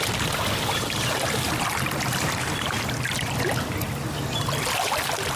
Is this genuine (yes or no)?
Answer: yes